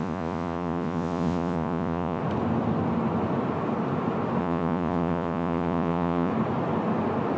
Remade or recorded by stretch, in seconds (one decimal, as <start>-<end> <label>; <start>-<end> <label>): 0.0-2.2 remade; 2.2-4.4 recorded; 4.4-6.3 remade; 6.3-7.4 recorded